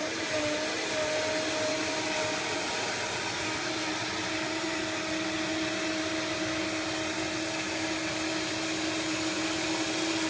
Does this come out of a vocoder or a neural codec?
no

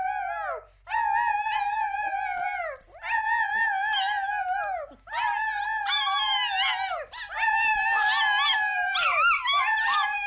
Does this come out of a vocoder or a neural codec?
no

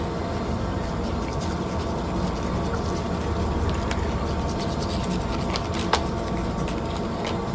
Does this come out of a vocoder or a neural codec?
no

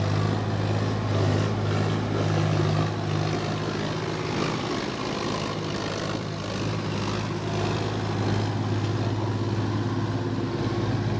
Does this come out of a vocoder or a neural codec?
no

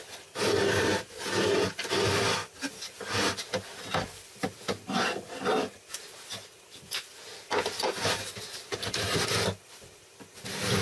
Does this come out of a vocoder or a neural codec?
no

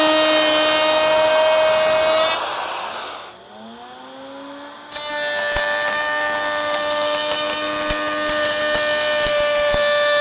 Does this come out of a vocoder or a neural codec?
no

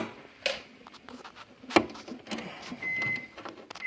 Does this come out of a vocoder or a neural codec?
no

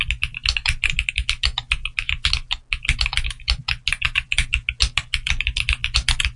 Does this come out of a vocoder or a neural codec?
no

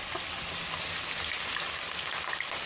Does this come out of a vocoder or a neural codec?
no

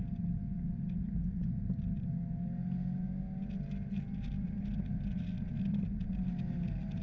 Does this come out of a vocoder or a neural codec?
no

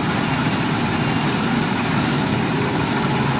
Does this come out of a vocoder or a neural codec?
no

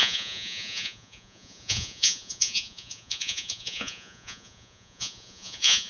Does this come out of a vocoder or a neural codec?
yes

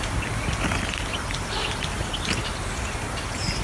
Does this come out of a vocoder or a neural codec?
no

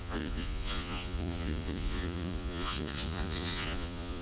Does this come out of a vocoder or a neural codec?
yes